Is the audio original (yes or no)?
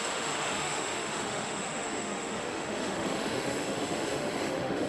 no